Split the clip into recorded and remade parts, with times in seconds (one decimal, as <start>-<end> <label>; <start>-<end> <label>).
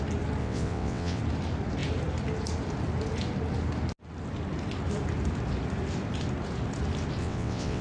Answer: 0.0-0.4 recorded; 0.4-1.2 remade; 1.2-7.2 recorded; 7.2-7.8 remade